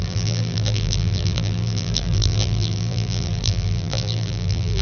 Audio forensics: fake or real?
fake